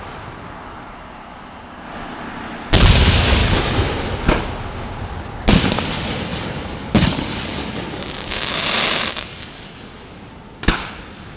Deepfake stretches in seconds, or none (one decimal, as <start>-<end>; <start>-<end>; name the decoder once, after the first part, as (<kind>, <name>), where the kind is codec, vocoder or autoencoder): 3.4-4.0 (codec, DAC); 6.3-8.5; 9.1-10.0